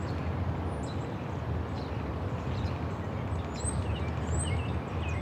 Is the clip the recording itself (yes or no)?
yes